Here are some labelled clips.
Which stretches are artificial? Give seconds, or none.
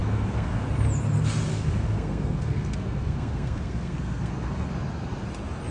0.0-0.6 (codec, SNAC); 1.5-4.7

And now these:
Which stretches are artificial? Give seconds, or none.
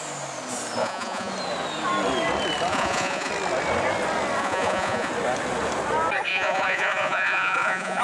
0.8-1.3 (vocoder, Vocos); 2.7-3.3; 4.4-5.1; 6.3-8.0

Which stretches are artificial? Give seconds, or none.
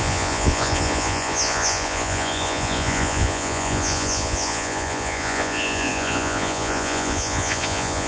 0.0-8.1 (vocoder, Vocos)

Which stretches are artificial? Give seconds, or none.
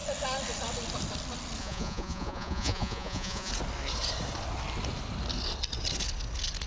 1.6-3.5 (vocoder, Vocos)